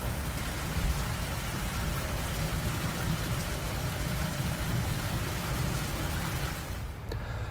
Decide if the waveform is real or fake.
fake